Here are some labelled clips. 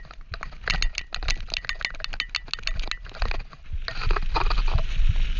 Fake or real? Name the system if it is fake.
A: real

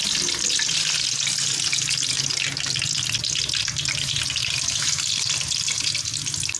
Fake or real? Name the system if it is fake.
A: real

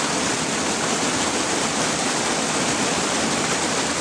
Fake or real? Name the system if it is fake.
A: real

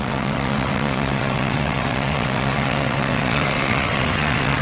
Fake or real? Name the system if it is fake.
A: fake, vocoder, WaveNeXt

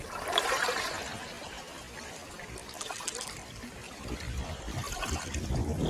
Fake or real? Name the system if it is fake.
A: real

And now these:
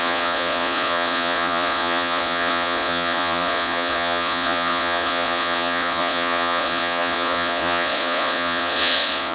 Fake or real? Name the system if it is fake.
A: fake, vocoder, Vocos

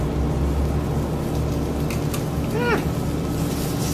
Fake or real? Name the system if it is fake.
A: real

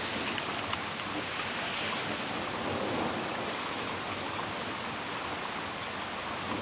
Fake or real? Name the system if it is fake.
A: real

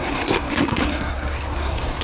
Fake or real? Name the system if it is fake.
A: fake, codec, SNAC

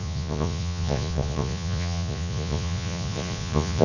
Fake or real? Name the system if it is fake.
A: fake, vocoder, Vocos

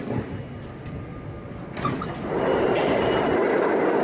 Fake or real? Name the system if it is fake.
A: real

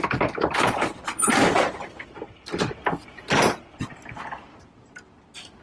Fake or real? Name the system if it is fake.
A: fake, vocoder, BigVGAN v2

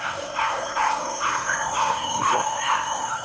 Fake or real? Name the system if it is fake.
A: fake, codec, SNAC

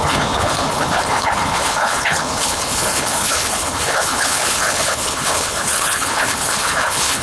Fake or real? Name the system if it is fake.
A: fake, codec, HILCodec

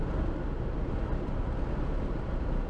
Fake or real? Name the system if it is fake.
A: real